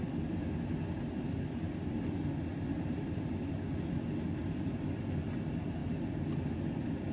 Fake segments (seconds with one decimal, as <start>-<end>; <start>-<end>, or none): none